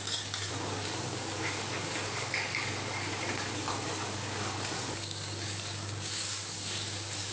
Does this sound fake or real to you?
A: fake